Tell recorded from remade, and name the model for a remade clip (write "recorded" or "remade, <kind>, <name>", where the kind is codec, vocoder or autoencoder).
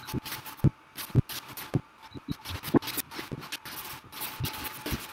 recorded